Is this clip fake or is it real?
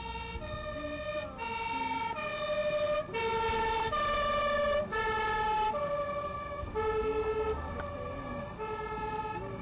real